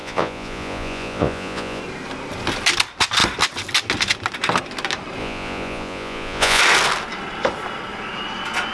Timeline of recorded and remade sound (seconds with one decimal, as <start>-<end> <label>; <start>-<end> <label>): 0.0-1.8 remade; 1.8-5.2 recorded; 5.2-6.6 remade; 6.6-8.7 recorded